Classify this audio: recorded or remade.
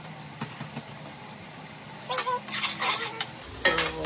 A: recorded